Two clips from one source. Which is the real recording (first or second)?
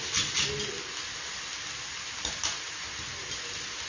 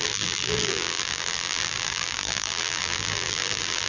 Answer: first